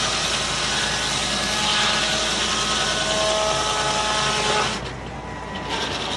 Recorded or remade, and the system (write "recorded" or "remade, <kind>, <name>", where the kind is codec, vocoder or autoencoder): recorded